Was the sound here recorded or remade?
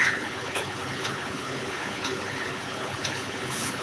remade